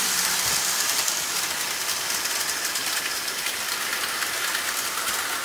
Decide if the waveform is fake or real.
real